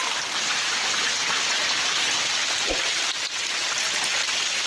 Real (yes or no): yes